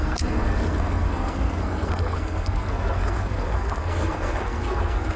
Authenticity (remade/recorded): remade